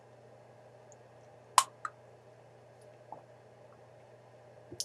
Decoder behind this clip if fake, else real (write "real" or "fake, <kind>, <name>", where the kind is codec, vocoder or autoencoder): real